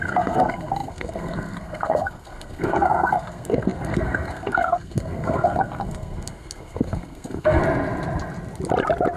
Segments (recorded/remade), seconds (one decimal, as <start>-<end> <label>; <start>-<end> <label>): 0.0-7.6 remade; 7.6-9.2 recorded